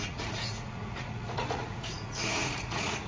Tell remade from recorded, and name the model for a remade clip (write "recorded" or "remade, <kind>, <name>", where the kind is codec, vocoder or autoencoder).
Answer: remade, vocoder, Vocos